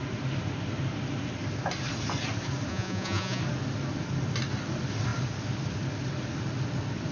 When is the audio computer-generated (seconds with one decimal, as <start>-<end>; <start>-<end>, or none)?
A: 2.7-3.4